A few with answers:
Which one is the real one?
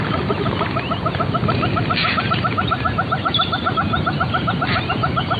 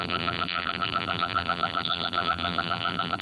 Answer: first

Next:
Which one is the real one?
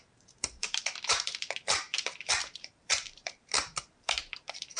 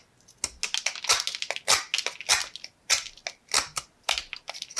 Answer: second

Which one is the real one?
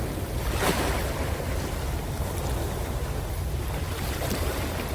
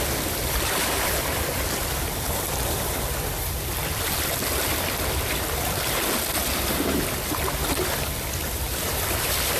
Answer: first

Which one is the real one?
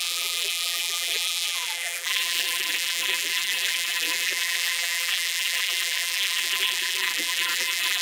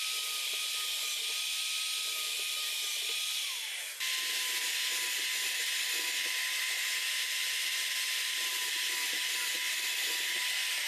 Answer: second